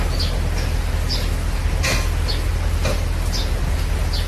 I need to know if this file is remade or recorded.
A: recorded